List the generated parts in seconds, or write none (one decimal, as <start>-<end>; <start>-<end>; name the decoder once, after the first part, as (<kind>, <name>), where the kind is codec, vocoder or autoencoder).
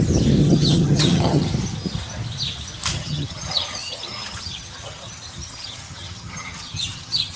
0.4-1.5 (vocoder, HiFi-GAN); 2.9-7.4